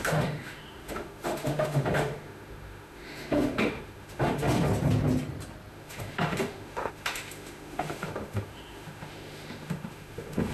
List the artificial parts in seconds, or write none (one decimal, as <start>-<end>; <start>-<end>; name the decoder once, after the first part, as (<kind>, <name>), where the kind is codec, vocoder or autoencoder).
0.0-4.7 (autoencoder, DAC-VAE); 5.7-10.5